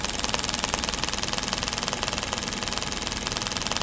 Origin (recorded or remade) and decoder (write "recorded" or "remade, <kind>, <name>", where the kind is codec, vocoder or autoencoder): recorded